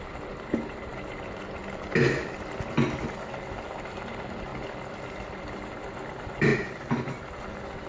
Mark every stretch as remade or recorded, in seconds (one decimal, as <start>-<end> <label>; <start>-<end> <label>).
0.0-7.9 recorded